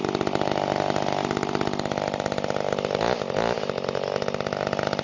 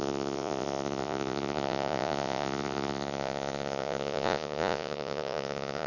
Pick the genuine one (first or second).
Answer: first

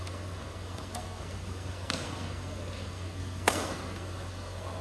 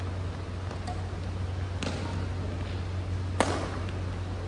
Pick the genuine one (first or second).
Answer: second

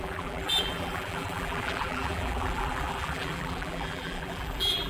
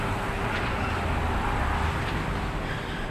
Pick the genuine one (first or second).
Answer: second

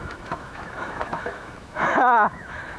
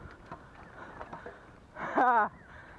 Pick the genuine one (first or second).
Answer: second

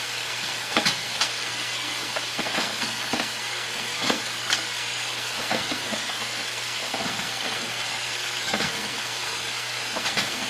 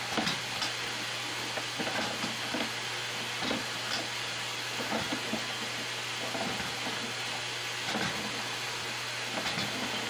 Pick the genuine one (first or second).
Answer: second